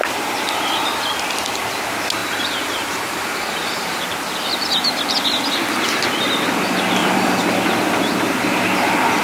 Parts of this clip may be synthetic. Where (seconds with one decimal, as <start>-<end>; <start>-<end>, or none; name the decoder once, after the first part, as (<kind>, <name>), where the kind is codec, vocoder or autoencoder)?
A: 2.2-4.0 (vocoder, BigVGAN v2); 7.0-7.5